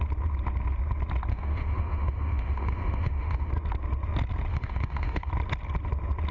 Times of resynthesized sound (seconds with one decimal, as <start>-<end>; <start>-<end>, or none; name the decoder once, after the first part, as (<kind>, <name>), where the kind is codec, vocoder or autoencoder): 1.3-3.5 (autoencoder, DAC-VAE); 4.5-5.3